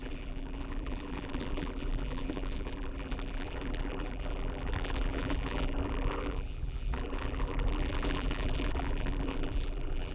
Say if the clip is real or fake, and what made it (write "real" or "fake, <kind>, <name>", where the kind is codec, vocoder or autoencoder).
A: fake, vocoder, BigVGAN v2